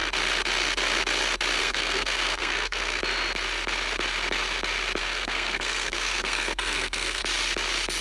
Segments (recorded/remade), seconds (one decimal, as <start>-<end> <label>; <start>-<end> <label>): 0.0-1.6 recorded; 1.6-3.0 remade; 3.0-5.0 recorded; 5.0-7.2 remade; 7.2-8.0 recorded